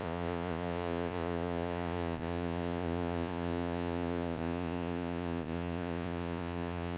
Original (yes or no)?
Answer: no